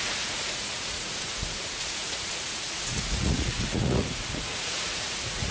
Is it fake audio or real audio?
fake